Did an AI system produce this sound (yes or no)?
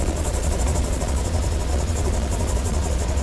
yes